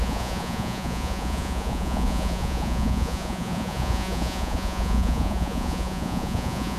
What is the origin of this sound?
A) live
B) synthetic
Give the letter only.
B